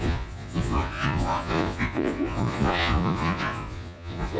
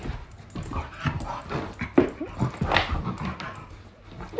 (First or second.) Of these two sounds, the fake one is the first